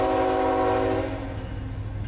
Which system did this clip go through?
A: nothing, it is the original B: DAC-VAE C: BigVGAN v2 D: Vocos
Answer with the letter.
A